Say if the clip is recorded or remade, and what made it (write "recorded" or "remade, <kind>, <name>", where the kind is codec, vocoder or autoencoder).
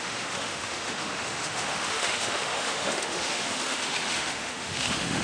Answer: remade, autoencoder, DAC-VAE